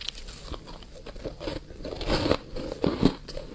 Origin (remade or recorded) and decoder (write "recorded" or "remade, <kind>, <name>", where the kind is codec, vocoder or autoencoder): recorded